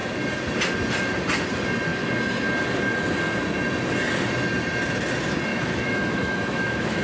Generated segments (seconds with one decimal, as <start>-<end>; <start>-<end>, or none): 5.5-7.0